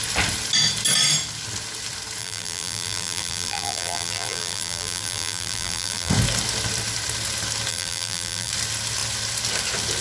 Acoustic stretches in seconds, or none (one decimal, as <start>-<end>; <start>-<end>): 0.0-2.2; 6.1-7.7; 8.5-10.0